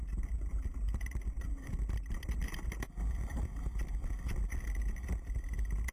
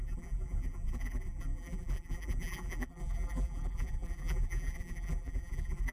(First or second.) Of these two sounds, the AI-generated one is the second